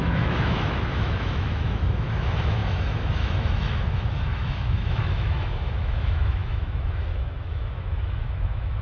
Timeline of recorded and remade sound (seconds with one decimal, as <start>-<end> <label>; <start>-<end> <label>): 0.0-8.8 remade